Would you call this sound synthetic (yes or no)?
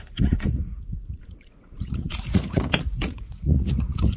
yes